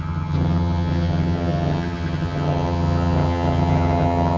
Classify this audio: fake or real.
fake